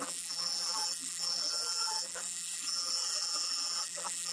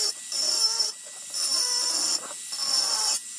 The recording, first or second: second